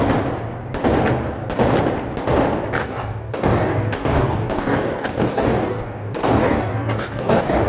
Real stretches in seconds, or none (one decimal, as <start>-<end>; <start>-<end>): 0.0-2.8